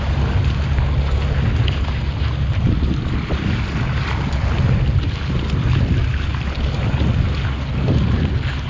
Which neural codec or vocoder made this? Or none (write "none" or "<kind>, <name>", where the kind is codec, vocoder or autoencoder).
none